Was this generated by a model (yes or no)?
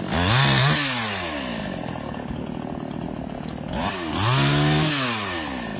no